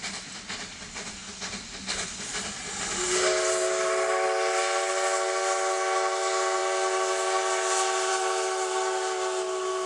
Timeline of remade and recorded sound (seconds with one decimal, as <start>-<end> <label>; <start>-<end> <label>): 0.0-9.9 recorded